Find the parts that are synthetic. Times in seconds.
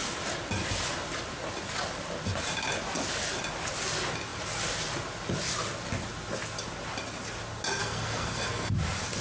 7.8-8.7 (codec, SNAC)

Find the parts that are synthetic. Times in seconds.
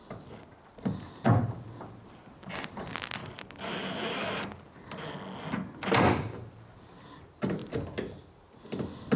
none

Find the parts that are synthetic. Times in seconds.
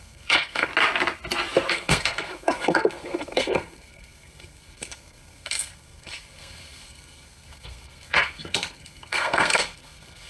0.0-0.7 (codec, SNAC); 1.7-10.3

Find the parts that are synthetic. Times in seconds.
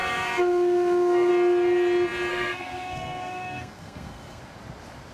0.0-1.3 (codec, SNAC); 2.3-4.4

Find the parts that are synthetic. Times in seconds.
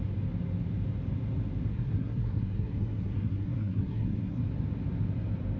1.7-4.4 (codec, SNAC)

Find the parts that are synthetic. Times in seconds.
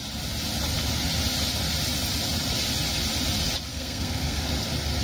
3.7-4.5 (codec, SNAC)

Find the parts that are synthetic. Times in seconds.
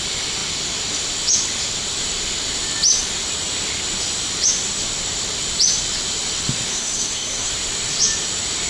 6.7-7.5 (codec, SNAC)